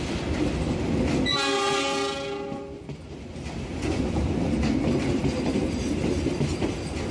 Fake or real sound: real